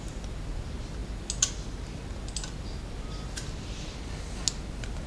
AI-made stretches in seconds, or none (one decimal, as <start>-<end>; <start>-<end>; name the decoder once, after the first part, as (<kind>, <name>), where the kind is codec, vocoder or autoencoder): none